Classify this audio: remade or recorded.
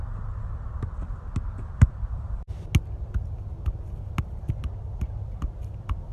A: recorded